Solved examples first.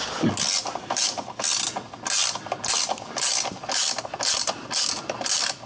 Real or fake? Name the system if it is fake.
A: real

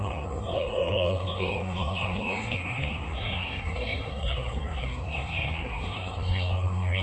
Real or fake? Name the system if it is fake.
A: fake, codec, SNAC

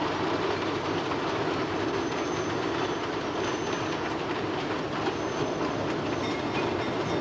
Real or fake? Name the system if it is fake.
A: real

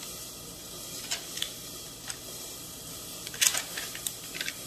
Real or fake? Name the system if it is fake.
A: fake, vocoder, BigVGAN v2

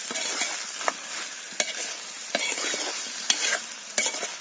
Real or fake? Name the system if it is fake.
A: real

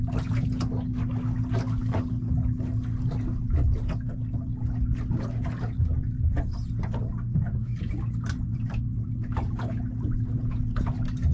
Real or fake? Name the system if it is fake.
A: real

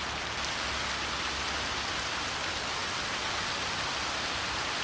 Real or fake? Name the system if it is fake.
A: real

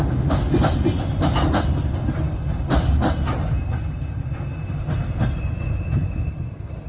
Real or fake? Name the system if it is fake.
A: real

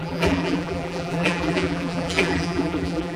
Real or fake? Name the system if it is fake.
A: fake, vocoder, BigVGAN v2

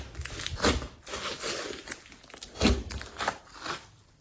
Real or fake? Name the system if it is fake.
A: real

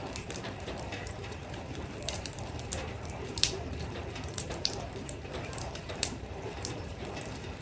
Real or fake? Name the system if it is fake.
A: fake, vocoder, BigVGAN v2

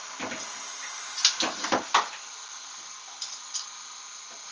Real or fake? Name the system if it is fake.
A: real